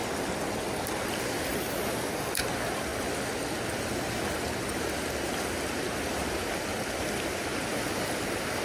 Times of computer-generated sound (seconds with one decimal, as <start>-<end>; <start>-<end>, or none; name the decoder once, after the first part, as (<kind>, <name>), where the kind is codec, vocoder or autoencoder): 0.6-2.9 (vocoder, BigVGAN v2); 6.7-8.6